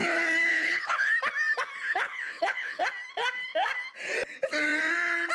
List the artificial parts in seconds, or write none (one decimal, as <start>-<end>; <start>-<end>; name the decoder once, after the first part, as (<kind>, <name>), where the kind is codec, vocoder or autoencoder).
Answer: 0.5-1.1 (codec, HILCodec); 1.9-2.8